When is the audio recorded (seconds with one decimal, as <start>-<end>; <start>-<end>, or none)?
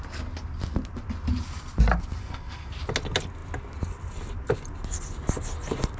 0.0-2.2; 2.7-6.0